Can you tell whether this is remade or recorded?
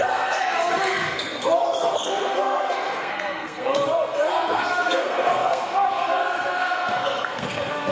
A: remade